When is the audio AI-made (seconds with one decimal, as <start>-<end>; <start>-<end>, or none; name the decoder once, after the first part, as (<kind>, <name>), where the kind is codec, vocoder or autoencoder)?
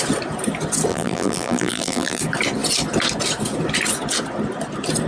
0.9-2.2 (vocoder, BigVGAN v2)